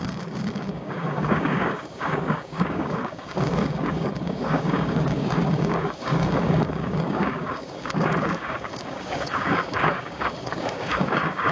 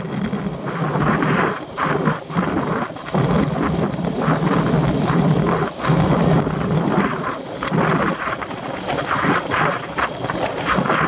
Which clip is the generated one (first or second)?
first